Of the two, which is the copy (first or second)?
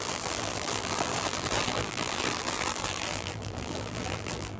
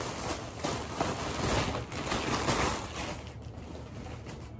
first